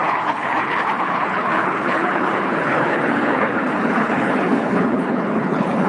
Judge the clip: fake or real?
fake